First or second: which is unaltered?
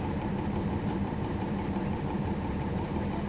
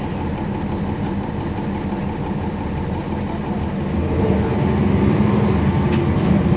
second